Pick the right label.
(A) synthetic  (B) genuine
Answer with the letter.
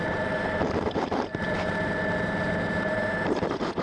A